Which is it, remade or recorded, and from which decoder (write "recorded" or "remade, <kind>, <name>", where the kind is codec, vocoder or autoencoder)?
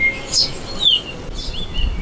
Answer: recorded